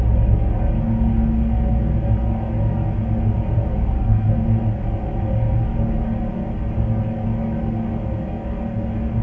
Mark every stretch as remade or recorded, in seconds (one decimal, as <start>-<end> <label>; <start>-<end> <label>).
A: 0.0-3.7 recorded; 3.7-4.3 remade; 4.3-9.2 recorded